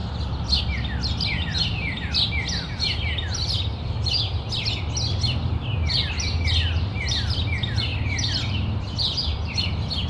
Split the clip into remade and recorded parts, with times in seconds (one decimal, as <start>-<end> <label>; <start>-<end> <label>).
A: 0.0-0.6 remade; 0.6-1.5 recorded; 1.5-2.1 remade; 2.1-10.1 recorded